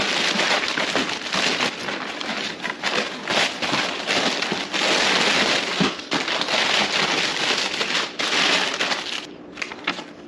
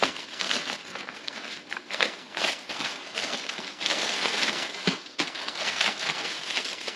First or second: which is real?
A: first